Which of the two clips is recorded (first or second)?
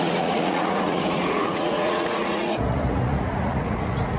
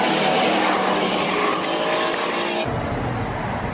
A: second